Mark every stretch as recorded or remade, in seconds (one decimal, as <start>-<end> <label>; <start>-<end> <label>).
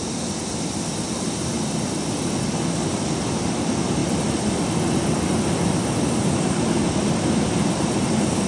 0.0-8.5 recorded